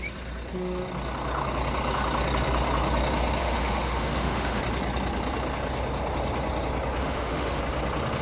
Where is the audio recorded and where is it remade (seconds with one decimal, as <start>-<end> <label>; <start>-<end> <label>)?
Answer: 0.0-3.4 recorded; 3.4-4.6 remade; 4.6-7.0 recorded; 7.0-7.6 remade; 7.6-8.2 recorded

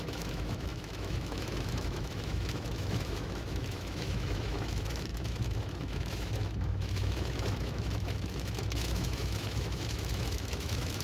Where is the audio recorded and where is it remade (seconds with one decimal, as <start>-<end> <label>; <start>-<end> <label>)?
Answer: 0.0-11.0 remade

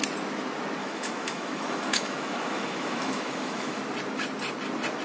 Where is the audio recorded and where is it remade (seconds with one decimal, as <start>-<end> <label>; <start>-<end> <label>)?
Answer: 0.0-0.8 recorded; 0.8-3.8 remade; 3.8-5.0 recorded

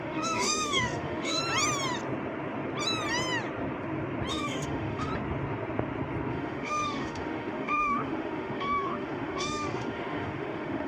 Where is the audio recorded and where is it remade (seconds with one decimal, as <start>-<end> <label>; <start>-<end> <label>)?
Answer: 0.0-1.4 remade; 1.4-4.3 recorded; 4.3-5.1 remade; 5.1-6.3 recorded; 6.3-10.9 remade